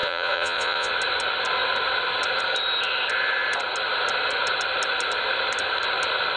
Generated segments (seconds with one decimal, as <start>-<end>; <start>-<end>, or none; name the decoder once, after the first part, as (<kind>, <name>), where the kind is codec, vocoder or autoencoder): 0.0-0.9 (vocoder, Vocos)